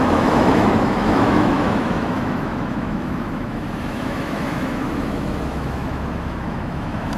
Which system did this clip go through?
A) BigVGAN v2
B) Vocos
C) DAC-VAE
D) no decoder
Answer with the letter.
C